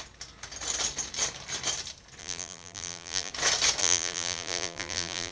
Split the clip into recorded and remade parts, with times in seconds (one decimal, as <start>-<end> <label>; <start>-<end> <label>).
0.0-2.2 recorded; 2.2-3.3 remade; 3.3-3.8 recorded; 3.8-5.3 remade